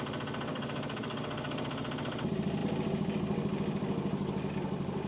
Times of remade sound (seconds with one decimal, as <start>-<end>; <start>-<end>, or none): 0.5-1.7